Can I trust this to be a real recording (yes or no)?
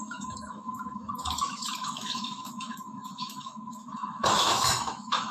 no